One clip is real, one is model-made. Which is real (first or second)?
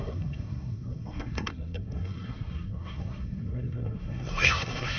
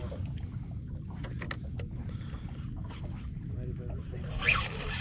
second